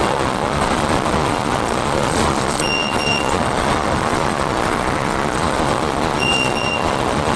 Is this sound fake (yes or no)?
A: yes